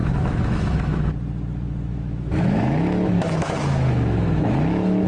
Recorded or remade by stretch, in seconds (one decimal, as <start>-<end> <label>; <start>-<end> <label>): 0.0-1.0 remade; 1.0-1.9 recorded; 1.9-5.1 remade

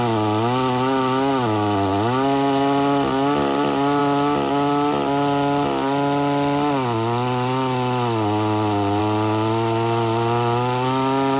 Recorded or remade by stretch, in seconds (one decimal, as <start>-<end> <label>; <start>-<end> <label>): 0.0-11.4 recorded

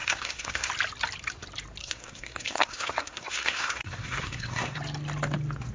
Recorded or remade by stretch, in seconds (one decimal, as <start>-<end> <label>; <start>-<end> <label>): 0.0-0.7 remade; 0.7-1.8 recorded; 1.8-4.8 remade; 4.8-5.7 recorded

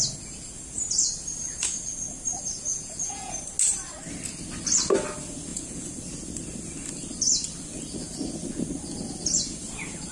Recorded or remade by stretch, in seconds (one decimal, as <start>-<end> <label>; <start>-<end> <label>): 0.0-2.7 recorded; 2.7-3.3 remade; 3.3-5.5 recorded; 5.5-6.0 remade; 6.0-10.1 recorded